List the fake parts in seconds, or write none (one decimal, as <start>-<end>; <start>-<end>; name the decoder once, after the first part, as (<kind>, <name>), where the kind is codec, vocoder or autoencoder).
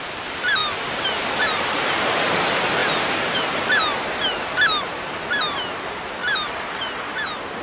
6.2-7.6 (vocoder, BigVGAN v2)